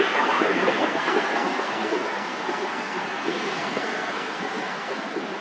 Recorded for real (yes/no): no